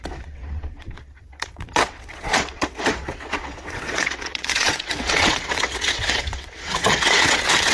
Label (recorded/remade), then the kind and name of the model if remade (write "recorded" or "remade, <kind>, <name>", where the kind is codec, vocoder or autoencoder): remade, vocoder, WaveNeXt